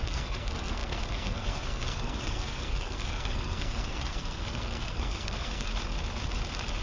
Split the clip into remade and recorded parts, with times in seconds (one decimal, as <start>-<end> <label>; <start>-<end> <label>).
0.0-5.7 remade; 5.7-6.8 recorded

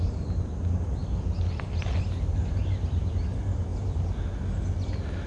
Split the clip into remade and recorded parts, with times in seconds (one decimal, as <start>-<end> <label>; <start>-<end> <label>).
0.0-5.3 recorded